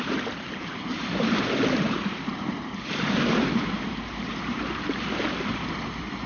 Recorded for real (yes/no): no